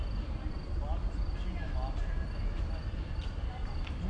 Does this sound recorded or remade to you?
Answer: recorded